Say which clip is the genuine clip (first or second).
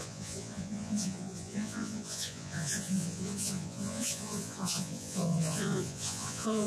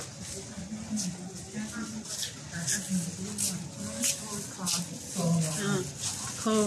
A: second